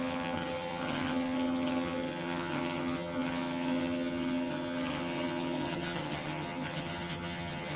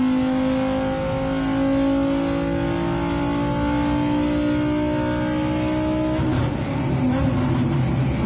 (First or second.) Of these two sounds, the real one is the second